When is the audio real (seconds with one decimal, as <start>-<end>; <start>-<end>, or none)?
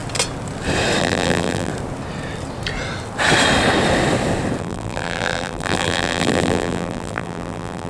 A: 0.0-1.0; 1.7-4.6